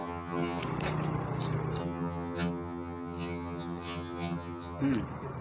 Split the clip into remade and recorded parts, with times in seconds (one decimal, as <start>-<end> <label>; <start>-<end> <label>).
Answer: 0.0-0.6 remade; 0.6-1.8 recorded; 1.8-4.8 remade; 4.8-5.4 recorded